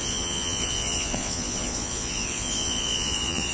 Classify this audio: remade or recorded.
remade